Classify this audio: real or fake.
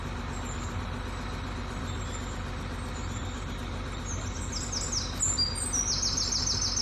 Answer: real